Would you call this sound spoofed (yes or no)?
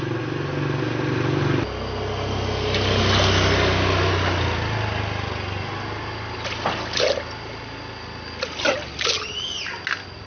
no